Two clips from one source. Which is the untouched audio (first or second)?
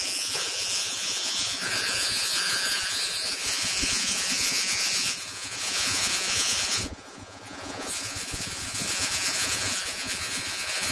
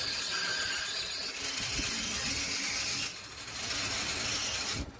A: second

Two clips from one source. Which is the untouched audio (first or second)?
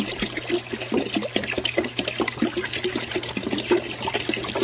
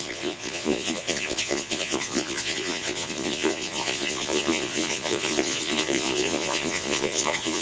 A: first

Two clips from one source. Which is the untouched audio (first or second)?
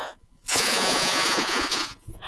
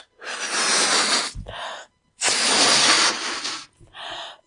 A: second